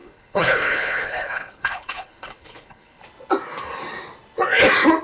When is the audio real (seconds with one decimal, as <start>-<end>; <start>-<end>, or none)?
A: 3.0-5.0